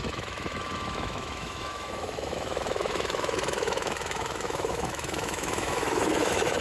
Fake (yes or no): yes